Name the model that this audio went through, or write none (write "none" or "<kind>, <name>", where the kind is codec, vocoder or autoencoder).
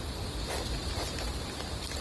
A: none